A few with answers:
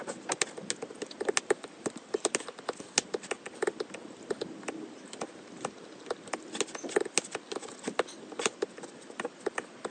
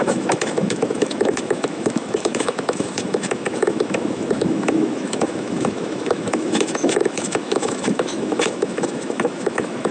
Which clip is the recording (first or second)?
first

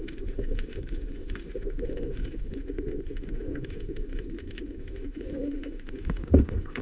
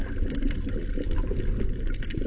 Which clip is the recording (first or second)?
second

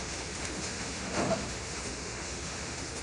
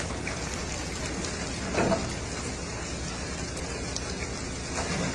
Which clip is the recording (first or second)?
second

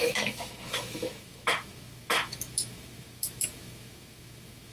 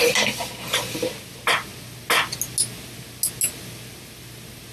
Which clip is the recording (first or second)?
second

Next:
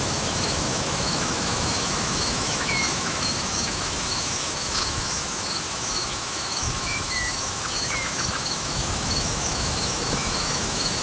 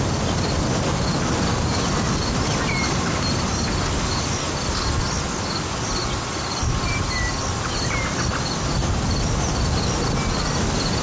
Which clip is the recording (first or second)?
second